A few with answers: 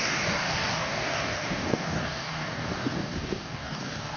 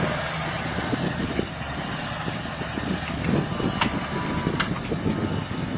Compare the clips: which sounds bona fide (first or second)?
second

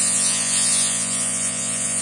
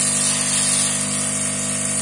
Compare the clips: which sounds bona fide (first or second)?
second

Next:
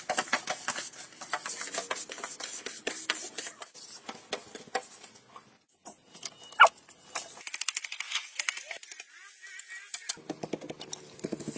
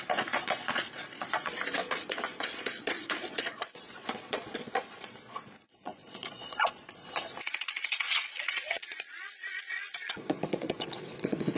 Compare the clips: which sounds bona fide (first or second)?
first